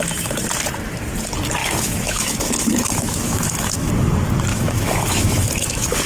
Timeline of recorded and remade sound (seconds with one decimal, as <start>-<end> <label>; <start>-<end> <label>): 0.0-1.6 recorded; 1.6-3.9 remade; 3.9-4.5 recorded; 4.5-6.1 remade